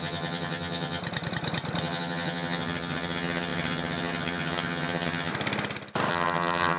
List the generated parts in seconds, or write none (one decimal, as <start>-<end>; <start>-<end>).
0.0-1.0; 1.8-5.3; 6.1-6.8